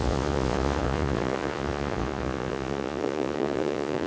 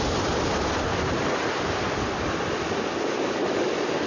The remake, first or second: first